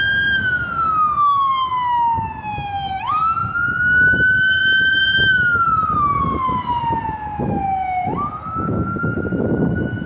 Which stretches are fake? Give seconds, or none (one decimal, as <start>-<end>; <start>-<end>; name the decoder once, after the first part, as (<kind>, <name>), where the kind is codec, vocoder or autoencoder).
none